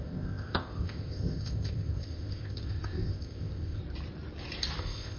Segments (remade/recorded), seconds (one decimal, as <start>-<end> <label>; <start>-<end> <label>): 0.0-3.8 remade; 3.8-4.8 recorded; 4.8-5.2 remade